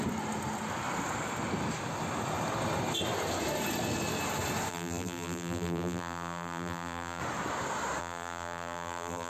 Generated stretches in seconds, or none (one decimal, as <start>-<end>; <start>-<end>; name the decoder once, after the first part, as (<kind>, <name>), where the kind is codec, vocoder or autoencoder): 4.7-7.2 (vocoder, BigVGAN v2); 8.0-9.3